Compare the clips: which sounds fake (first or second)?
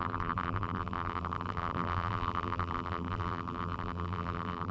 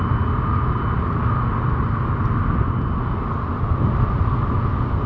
first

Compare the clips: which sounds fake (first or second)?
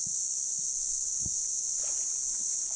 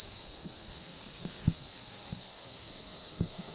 second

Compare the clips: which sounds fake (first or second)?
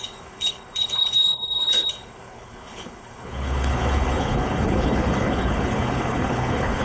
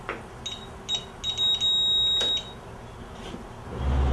first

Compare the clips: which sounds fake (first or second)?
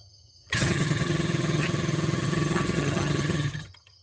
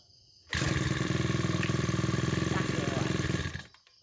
first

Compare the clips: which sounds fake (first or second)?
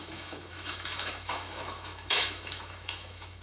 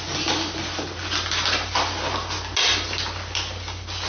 first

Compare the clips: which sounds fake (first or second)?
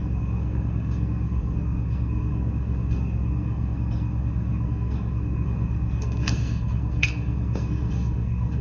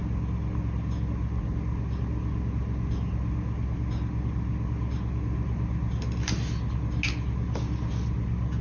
first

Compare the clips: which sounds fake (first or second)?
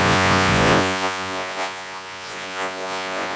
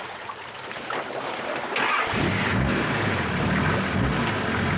first